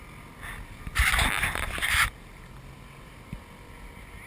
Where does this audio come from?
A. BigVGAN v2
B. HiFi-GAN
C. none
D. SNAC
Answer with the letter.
C